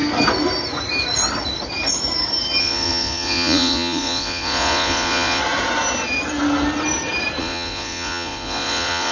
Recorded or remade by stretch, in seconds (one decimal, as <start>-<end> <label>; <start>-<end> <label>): 0.0-2.6 recorded; 2.6-5.4 remade; 5.4-7.4 recorded; 7.4-9.1 remade